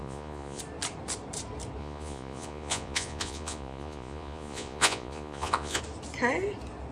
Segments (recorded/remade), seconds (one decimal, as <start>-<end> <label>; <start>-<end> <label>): 0.0-0.6 remade; 0.6-1.8 recorded; 1.8-5.8 remade; 5.8-6.9 recorded